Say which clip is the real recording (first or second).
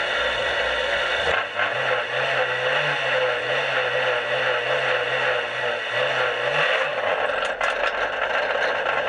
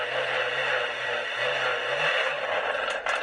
first